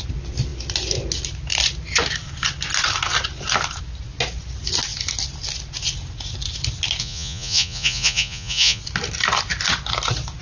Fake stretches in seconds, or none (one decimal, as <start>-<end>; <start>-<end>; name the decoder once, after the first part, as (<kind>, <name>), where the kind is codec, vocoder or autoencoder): 7.0-8.8 (vocoder, Vocos)